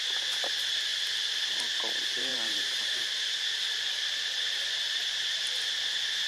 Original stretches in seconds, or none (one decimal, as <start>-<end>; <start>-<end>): 0.0-2.3